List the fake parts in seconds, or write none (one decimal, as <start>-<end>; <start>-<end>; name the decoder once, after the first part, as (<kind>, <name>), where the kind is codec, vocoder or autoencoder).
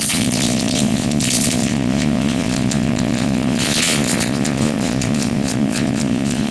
0.0-6.5 (vocoder, Vocos)